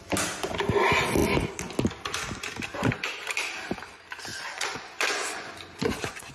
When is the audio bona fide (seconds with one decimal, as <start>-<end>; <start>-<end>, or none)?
0.0-4.3